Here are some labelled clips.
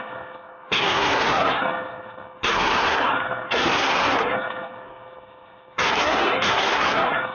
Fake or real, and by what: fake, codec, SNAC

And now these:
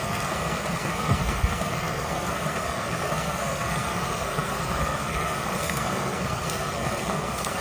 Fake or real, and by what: fake, codec, SNAC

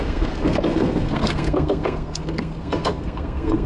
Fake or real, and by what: fake, codec, SNAC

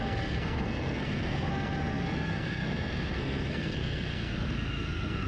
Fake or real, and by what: fake, codec, SNAC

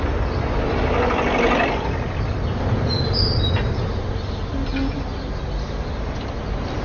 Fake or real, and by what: real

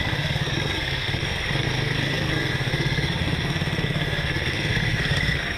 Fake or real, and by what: fake, codec, SNAC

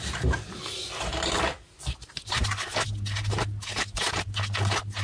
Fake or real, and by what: real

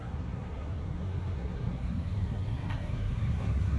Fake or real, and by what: fake, codec, SNAC